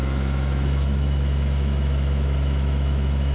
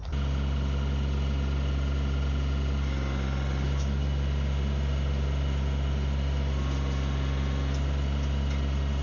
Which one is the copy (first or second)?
first